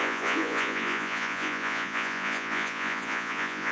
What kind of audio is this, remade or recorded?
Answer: remade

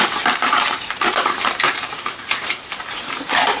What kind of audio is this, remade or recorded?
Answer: remade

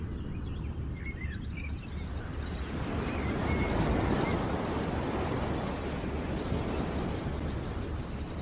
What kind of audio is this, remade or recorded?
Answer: recorded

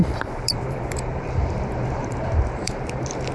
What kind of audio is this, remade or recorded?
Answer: remade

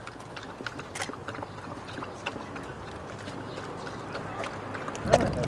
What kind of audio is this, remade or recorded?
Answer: recorded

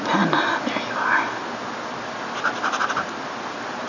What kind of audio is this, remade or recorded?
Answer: recorded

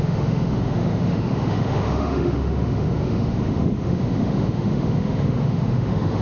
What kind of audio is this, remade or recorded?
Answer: remade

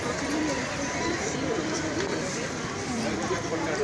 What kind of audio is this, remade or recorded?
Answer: remade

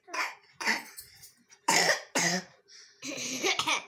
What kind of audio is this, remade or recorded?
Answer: remade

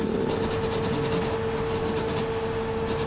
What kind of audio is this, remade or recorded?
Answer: recorded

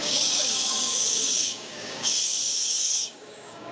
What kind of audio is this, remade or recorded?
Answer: remade